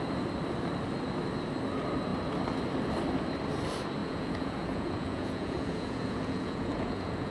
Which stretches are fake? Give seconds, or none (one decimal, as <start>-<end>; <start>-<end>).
4.0-7.3

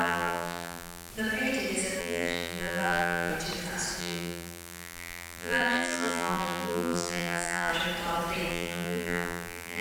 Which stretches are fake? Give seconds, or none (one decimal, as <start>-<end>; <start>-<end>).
0.0-1.1; 2.0-3.3; 4.0-7.7; 8.5-9.8

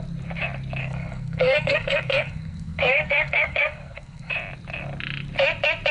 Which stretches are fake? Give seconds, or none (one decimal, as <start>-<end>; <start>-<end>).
0.8-4.3

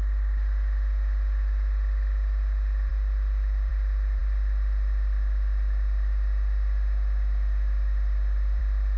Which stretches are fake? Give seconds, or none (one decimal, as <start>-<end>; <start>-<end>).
none